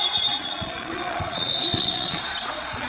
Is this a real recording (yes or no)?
no